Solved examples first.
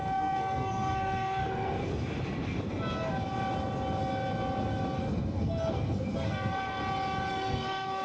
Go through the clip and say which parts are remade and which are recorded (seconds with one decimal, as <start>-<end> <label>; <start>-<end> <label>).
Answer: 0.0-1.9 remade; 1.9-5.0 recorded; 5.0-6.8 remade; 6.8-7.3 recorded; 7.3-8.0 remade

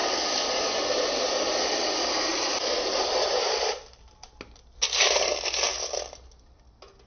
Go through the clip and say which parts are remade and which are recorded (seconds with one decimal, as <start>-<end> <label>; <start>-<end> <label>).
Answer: 0.0-7.1 recorded

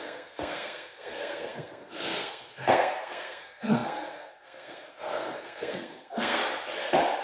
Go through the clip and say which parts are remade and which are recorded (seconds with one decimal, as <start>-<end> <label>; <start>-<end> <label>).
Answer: 0.0-6.4 remade; 6.4-7.2 recorded

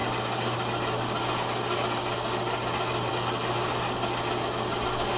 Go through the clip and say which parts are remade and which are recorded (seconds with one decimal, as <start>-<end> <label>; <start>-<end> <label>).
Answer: 0.0-5.2 recorded